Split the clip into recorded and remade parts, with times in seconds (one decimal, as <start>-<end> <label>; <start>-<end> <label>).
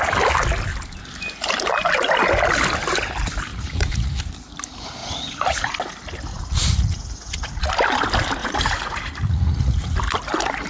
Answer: 0.0-3.5 recorded; 3.5-4.2 remade; 4.2-5.0 recorded; 5.0-5.7 remade; 5.7-6.3 recorded; 6.3-7.7 remade; 7.7-8.4 recorded; 8.4-9.9 remade; 9.9-10.7 recorded